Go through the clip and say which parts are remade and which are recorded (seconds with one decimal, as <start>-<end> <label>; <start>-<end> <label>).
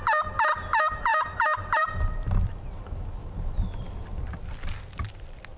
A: 0.0-5.6 recorded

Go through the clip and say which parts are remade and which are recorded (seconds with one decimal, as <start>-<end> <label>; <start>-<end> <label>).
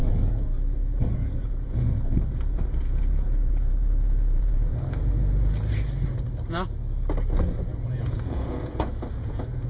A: 0.0-5.0 remade; 5.0-7.7 recorded; 7.7-9.7 remade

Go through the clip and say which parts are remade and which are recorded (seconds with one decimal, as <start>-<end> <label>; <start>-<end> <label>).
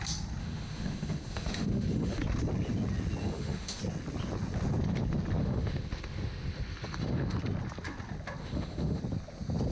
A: 0.0-0.4 recorded; 0.4-2.2 remade; 2.2-3.2 recorded; 3.2-3.8 remade; 3.8-5.4 recorded; 5.4-7.4 remade; 7.4-8.4 recorded; 8.4-9.0 remade; 9.0-9.7 recorded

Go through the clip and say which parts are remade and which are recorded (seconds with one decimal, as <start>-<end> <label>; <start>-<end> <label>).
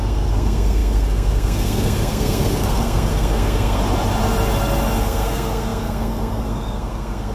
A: 0.0-3.8 remade; 3.8-5.0 recorded; 5.0-7.3 remade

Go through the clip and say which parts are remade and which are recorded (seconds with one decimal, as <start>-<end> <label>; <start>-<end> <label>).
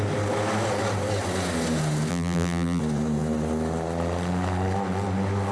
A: 0.0-2.1 recorded; 2.1-2.8 remade; 2.8-5.5 recorded